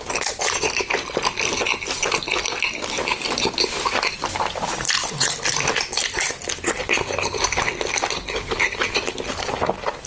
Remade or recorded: recorded